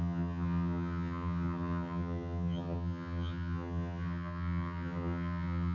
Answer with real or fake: fake